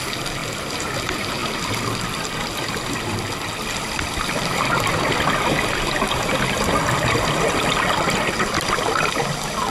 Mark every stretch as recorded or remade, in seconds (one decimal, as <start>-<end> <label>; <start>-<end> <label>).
0.0-0.4 recorded; 0.4-0.9 remade; 0.9-9.7 recorded